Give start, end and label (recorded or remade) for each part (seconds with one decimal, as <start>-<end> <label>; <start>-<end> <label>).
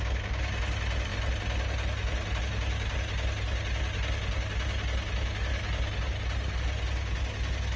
0.0-7.8 recorded